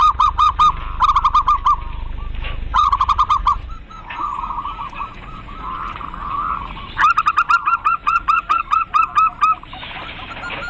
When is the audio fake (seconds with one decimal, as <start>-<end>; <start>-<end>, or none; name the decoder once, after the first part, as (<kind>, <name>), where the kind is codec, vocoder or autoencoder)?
0.0-0.6 (vocoder, Vocos); 2.7-6.9; 8.0-9.0